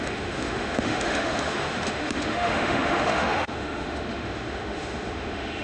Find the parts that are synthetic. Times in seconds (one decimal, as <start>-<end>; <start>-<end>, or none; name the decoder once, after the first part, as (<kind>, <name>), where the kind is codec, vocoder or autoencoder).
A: 0.0-5.6 (autoencoder, DAC-VAE)